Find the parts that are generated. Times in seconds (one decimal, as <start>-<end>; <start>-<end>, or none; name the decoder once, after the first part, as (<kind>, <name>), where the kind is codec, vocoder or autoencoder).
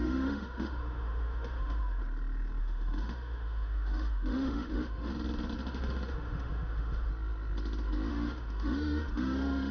0.0-2.0 (autoencoder, DAC-VAE); 2.6-5.1; 5.7-7.1; 8.1-9.7